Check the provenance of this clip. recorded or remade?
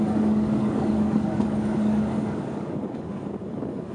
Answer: remade